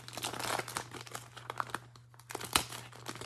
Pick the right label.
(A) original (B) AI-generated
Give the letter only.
A